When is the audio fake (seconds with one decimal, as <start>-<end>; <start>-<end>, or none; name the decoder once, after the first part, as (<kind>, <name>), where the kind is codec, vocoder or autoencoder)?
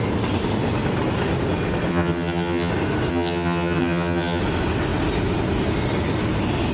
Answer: 1.9-2.7 (vocoder, HiFi-GAN); 3.1-4.4